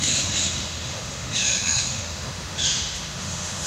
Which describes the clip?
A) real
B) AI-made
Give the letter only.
B